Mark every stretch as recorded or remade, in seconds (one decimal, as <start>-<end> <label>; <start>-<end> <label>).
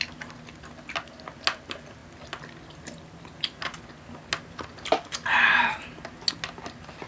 0.0-7.1 recorded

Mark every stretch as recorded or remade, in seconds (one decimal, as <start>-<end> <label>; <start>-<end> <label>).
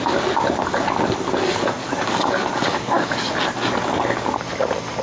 0.0-1.8 recorded; 1.8-3.3 remade; 3.3-5.0 recorded